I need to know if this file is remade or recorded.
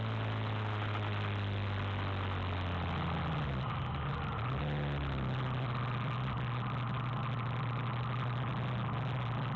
recorded